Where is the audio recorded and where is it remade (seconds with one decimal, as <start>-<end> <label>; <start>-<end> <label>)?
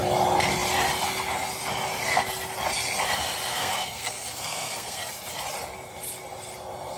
0.0-3.5 recorded; 3.5-5.1 remade; 5.1-7.0 recorded